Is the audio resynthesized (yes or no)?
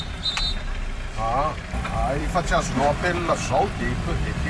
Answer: yes